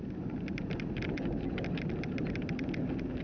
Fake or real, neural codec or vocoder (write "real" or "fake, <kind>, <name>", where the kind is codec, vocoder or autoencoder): real